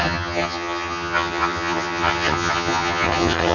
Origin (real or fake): fake